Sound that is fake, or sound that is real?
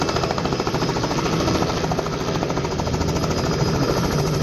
real